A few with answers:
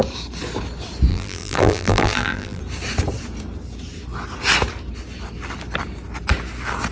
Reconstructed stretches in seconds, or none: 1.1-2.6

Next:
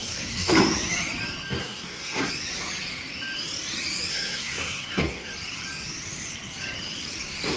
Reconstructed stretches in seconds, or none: 0.0-0.5; 1.6-2.3; 4.1-5.3